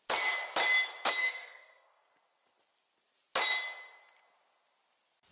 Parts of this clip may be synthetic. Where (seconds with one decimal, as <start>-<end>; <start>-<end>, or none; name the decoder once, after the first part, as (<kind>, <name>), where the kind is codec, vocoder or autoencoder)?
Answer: 1.2-2.1 (codec, SNAC)